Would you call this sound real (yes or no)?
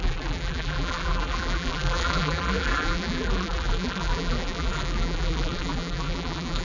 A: no